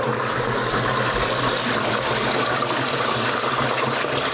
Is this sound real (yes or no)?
yes